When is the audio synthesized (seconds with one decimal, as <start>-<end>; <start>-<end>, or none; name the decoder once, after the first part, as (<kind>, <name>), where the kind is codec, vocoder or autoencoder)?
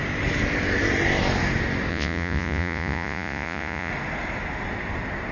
1.9-3.9 (vocoder, Vocos)